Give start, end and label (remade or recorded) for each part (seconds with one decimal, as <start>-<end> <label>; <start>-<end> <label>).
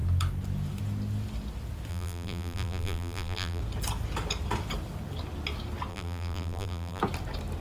0.0-1.9 recorded; 1.9-3.6 remade; 3.6-5.9 recorded; 5.9-7.0 remade; 7.0-7.6 recorded